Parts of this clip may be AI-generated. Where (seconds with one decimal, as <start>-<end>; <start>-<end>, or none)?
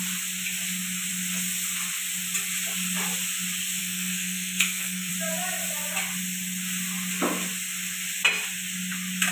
3.8-5.1